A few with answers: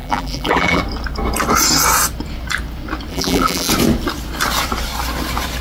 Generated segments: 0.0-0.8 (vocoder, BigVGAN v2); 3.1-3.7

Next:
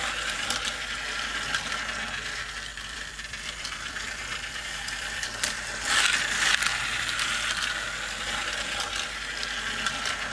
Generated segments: 2.7-7.6 (vocoder, BigVGAN v2)